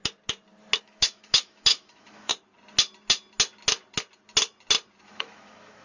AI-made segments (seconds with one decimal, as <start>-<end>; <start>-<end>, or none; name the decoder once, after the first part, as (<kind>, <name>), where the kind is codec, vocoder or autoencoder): 0.8-2.3 (autoencoder, DAC-VAE); 5.0-5.8